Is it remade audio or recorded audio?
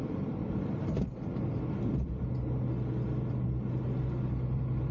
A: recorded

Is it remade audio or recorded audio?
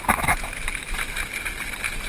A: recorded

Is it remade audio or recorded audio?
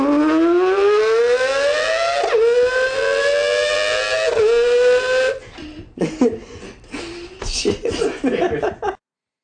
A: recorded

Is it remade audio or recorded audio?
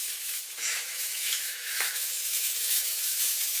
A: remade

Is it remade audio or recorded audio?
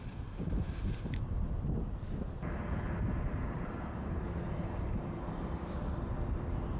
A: remade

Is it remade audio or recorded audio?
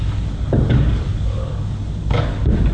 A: remade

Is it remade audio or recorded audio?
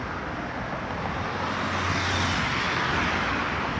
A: recorded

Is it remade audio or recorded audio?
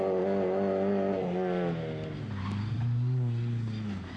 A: recorded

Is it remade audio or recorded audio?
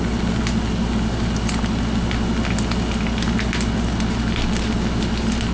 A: recorded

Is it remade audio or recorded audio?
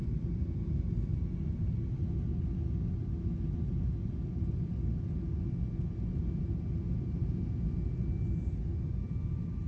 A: recorded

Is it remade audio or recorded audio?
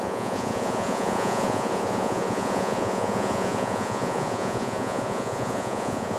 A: remade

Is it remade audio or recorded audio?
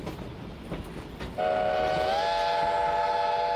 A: recorded